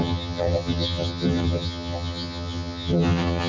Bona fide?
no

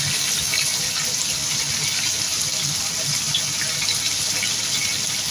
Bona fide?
yes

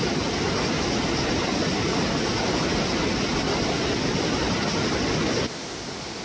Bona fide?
yes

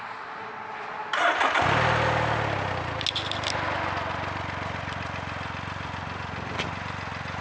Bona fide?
yes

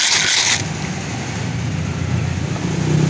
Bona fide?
yes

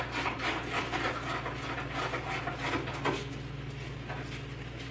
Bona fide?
yes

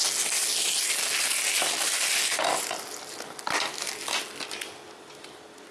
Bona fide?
yes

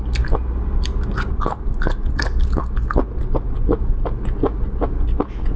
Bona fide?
yes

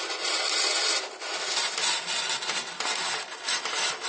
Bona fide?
yes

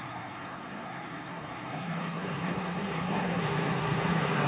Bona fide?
no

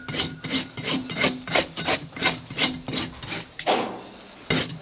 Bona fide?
yes